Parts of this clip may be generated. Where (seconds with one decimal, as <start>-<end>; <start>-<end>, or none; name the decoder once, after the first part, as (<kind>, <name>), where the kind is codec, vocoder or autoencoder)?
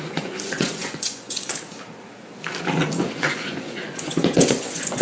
0.0-1.5 (vocoder, Vocos); 3.1-5.0